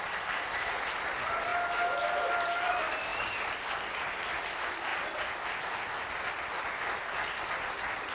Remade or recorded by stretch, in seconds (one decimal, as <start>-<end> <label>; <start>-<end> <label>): 0.0-8.1 recorded